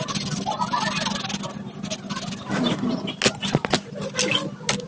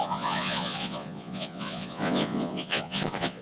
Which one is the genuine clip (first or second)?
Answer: first